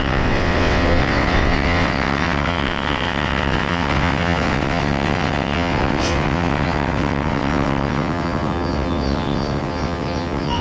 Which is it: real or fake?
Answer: fake